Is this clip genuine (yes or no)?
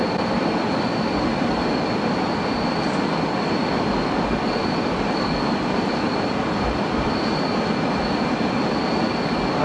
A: yes